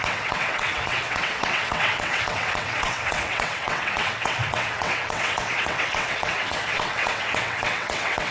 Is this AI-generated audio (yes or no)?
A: yes